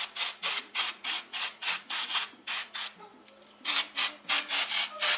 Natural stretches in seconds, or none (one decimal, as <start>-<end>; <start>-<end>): 0.0-0.4; 2.7-5.2